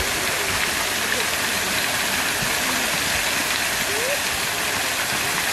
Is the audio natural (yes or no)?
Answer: yes